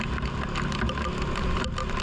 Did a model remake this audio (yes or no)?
no